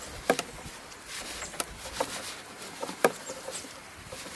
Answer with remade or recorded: remade